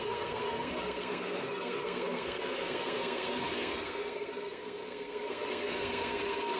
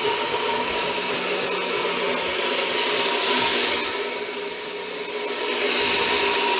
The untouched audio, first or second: second